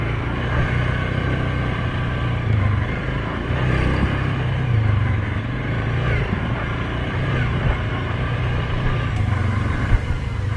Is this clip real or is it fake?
fake